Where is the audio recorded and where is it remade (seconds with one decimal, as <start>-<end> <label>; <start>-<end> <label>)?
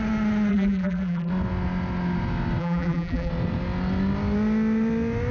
0.0-0.5 recorded; 0.5-1.3 remade; 1.3-2.6 recorded; 2.6-3.3 remade; 3.3-5.3 recorded